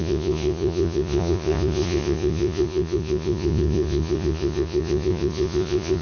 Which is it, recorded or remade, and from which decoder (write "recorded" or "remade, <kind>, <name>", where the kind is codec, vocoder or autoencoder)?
remade, vocoder, Vocos